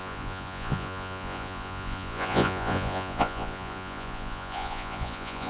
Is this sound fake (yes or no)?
yes